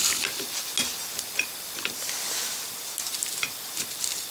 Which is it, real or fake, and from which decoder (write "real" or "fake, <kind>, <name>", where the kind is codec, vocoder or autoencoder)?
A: real